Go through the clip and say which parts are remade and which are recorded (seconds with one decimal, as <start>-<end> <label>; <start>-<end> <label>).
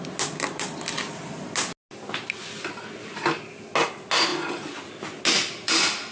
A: 0.0-6.1 recorded